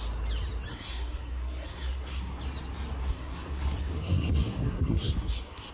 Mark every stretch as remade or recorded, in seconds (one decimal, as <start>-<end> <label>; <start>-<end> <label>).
0.0-0.7 recorded; 0.7-2.4 remade; 2.4-3.0 recorded; 3.0-5.7 remade